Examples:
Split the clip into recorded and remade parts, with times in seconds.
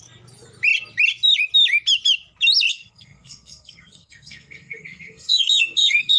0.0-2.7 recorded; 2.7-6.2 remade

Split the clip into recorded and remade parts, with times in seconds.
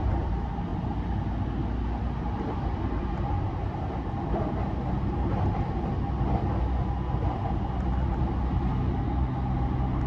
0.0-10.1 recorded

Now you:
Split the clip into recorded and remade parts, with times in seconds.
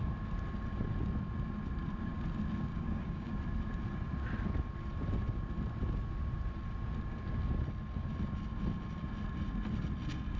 0.0-2.7 recorded; 2.7-3.3 remade; 3.3-10.4 recorded